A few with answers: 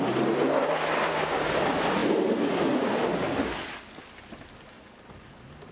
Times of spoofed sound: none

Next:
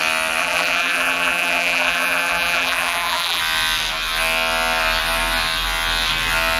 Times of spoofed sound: 0.4-3.4 (vocoder, BigVGAN v2)